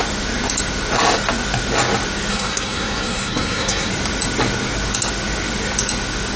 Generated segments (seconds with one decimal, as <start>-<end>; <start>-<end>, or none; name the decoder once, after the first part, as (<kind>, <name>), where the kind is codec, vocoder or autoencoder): 2.3-3.9 (codec, SNAC)